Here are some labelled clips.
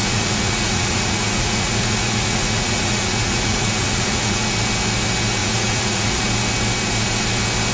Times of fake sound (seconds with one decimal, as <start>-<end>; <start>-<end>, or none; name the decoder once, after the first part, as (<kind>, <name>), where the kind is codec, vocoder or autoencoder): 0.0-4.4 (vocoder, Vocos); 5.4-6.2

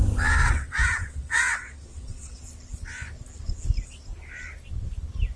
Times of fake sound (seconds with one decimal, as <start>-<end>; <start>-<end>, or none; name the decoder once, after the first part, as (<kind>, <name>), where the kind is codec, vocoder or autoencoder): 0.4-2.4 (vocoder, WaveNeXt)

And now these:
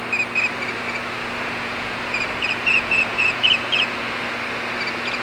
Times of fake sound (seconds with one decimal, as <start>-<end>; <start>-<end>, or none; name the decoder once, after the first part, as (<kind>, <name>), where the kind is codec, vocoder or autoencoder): 1.2-4.3 (vocoder, Vocos)

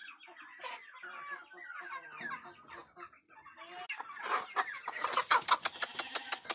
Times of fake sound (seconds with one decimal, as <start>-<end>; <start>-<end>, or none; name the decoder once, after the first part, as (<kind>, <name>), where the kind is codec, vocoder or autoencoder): none

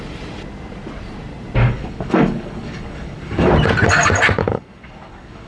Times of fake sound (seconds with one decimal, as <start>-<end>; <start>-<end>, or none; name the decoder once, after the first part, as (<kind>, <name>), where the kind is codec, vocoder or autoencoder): 1.6-3.5 (codec, DAC); 4.4-5.5

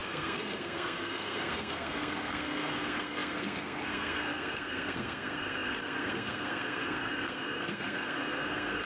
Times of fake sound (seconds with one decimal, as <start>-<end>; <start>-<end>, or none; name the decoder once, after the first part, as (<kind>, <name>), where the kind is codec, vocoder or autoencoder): 0.0-8.9 (codec, SNAC)

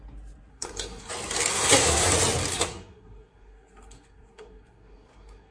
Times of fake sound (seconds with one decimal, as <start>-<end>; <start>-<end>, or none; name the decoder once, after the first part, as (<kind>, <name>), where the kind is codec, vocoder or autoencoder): 0.5-1.1 (codec, SNAC); 1.5-2.1; 2.5-5.5